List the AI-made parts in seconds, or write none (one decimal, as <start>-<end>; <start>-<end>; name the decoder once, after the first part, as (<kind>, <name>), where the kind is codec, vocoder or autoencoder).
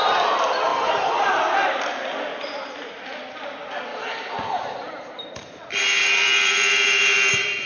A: 0.7-1.4 (vocoder, BigVGAN v2); 2.3-3.0; 3.9-5.6; 6.0-7.7